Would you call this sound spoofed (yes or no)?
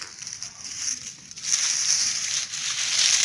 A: no